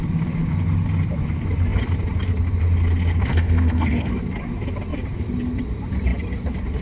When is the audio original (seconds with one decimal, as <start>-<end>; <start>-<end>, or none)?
0.0-3.3; 4.1-6.8